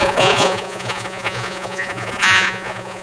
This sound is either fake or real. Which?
fake